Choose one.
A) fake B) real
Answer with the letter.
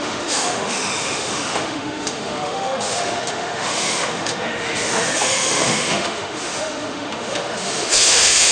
A